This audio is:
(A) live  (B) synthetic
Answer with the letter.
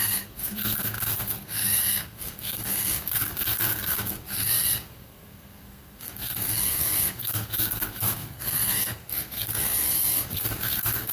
B